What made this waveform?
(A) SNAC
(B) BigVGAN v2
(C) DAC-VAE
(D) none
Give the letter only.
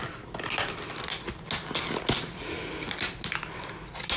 D